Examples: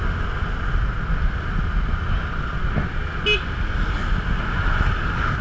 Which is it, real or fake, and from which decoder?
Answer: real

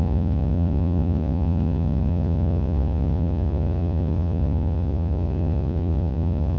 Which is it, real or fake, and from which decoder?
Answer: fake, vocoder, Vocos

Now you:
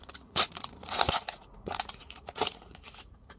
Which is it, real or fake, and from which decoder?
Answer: fake, vocoder, Vocos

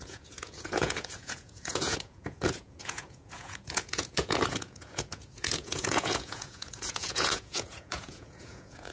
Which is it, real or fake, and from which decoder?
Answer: fake, vocoder, Vocos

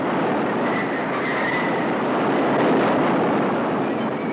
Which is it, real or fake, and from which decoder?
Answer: real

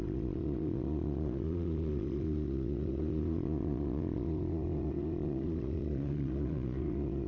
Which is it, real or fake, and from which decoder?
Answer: fake, vocoder, Vocos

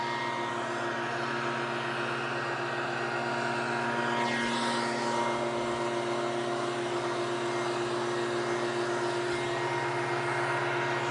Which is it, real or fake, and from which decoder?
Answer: real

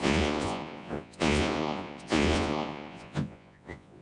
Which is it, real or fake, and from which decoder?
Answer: fake, vocoder, Vocos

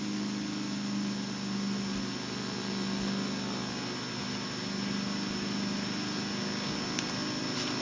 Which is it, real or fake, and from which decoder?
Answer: real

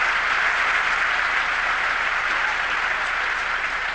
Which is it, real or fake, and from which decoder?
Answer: real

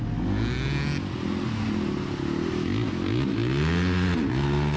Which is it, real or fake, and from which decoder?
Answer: real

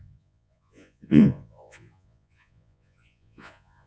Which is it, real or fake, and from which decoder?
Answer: fake, vocoder, Vocos